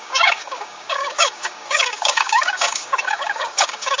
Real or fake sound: fake